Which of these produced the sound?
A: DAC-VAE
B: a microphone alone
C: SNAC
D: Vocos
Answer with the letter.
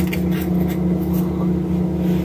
B